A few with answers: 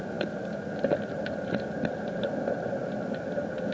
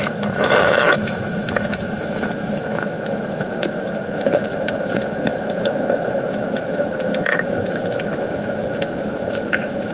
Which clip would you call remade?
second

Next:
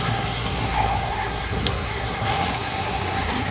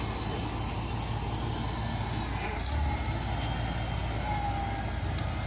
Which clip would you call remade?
first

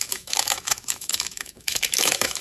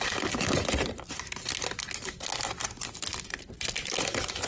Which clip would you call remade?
first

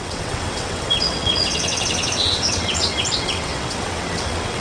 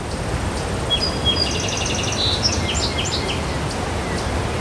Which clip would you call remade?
first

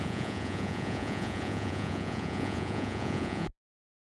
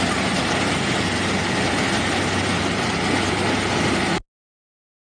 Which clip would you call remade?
first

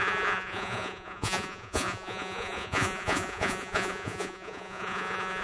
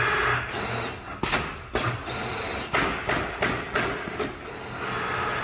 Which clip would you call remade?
first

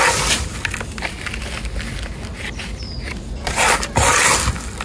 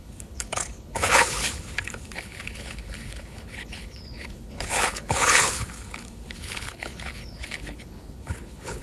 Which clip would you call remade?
second